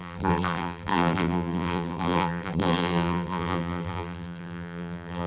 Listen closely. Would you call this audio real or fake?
fake